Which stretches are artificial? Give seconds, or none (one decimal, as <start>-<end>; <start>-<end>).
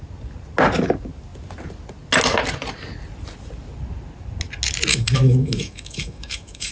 4.9-6.7